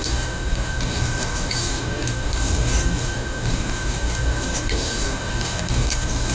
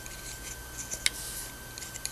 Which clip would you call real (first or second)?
second